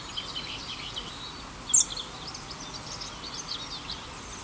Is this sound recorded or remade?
recorded